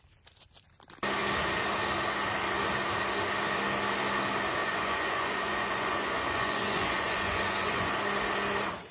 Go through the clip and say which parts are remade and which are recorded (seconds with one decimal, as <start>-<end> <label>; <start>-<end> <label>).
0.0-4.6 recorded; 4.6-7.9 remade; 7.9-8.9 recorded